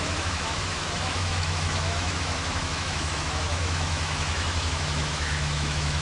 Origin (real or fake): fake